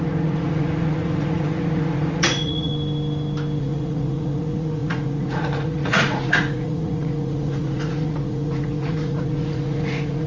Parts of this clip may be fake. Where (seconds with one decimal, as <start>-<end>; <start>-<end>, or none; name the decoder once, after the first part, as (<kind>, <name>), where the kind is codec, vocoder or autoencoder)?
0.0-2.7 (vocoder, Vocos); 3.6-10.3